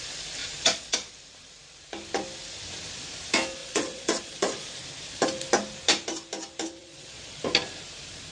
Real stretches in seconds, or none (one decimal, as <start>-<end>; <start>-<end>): 0.0-0.4; 1.1-3.6; 4.7-6.8; 7.4-8.3